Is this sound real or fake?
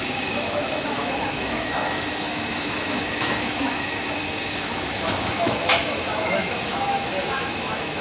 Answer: fake